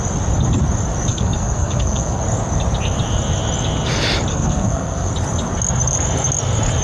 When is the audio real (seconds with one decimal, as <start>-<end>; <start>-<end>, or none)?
0.0-1.1; 2.2-4.3; 5.1-6.8